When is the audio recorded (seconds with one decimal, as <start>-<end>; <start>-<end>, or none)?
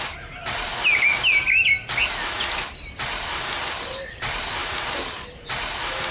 0.0-6.1